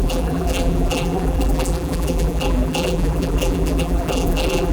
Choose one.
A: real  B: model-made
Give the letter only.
B